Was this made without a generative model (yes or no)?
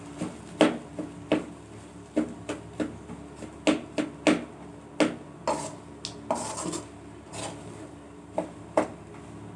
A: yes